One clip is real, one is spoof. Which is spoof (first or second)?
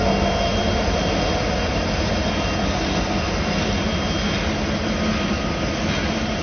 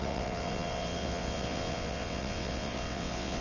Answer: second